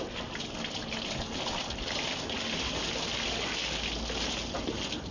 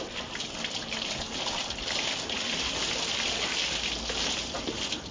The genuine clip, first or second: first